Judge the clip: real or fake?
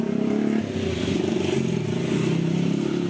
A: real